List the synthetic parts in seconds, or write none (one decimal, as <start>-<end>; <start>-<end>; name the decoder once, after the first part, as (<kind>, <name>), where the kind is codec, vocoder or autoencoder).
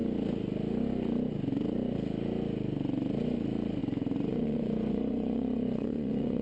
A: 4.3-6.4 (vocoder, Vocos)